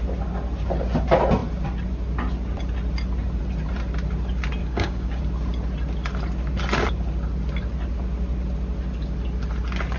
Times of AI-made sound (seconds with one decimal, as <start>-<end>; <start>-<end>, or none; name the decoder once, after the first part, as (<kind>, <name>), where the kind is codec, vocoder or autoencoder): 4.6-5.2 (codec, DAC)